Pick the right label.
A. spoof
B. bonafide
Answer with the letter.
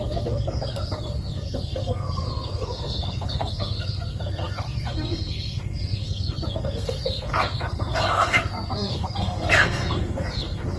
A